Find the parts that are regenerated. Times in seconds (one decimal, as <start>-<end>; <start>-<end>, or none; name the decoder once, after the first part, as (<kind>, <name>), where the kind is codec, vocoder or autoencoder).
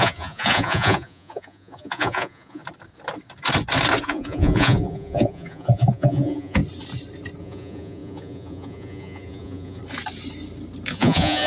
0.0-2.6 (vocoder, Vocos); 4.0-6.6; 7.4-9.8; 10.9-11.5